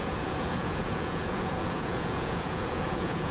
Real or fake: fake